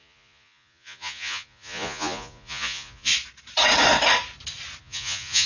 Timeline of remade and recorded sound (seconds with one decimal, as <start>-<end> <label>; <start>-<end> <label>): 0.0-3.1 remade; 3.1-4.8 recorded; 4.8-5.5 remade